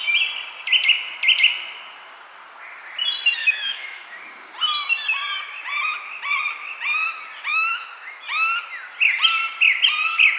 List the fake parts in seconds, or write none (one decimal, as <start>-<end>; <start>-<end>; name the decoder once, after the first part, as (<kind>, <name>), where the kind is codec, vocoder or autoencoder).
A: 3.4-4.2 (autoencoder, DAC-VAE); 7.5-8.2